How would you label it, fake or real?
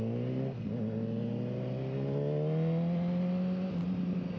real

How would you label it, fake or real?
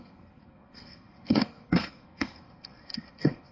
fake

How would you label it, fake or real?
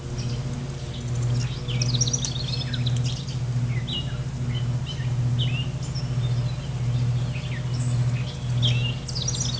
real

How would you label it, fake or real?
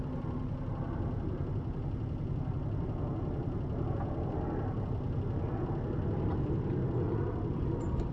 real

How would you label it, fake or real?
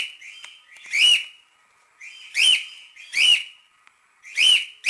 real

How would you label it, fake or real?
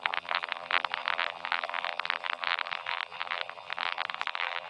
fake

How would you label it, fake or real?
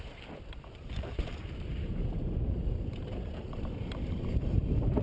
fake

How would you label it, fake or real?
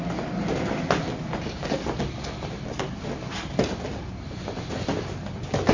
real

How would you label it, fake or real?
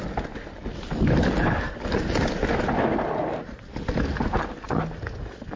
real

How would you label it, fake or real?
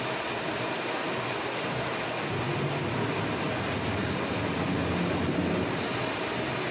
real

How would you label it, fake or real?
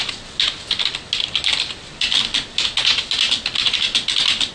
real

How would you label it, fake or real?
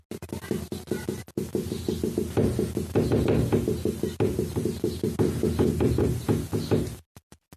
real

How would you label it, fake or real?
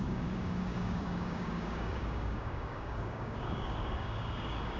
fake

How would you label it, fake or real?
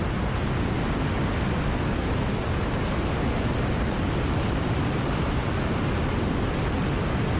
real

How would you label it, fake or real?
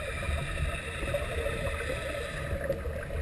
real